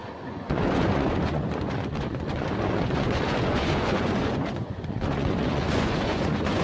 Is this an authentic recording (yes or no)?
no